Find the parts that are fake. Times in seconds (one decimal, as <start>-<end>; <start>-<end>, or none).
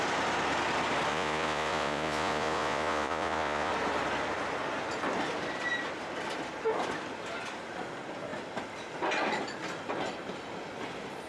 1.1-3.7